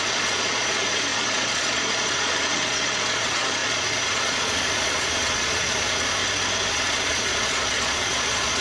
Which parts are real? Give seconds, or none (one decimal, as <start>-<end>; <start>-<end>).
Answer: 6.2-6.7